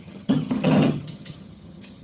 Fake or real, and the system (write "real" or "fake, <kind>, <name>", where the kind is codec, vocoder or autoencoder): fake, vocoder, HiFi-GAN